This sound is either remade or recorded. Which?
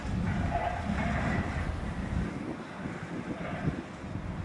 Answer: recorded